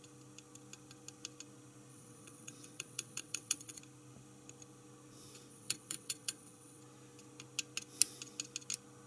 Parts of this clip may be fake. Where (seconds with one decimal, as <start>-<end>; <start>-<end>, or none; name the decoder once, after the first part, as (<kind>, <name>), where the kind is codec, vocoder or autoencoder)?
1.9-3.8 (vocoder, WaveNeXt); 5.5-6.8